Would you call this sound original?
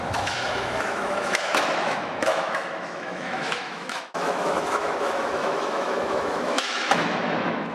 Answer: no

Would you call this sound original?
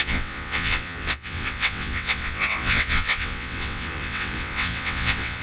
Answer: no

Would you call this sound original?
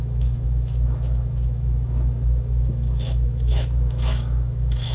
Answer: no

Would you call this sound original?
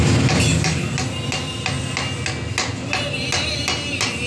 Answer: yes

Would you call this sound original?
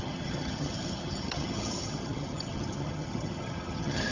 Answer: no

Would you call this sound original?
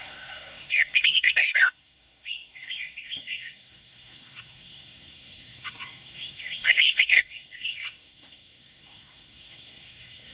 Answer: no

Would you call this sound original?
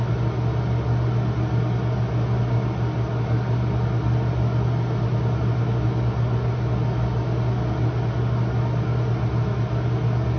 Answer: yes